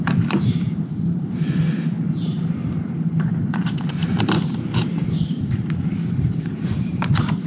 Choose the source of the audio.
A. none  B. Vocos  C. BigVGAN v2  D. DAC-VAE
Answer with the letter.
C